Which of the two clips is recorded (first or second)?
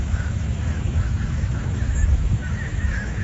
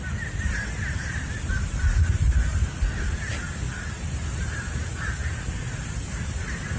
second